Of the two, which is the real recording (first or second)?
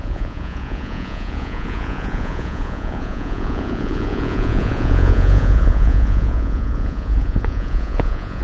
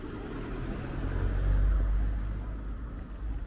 second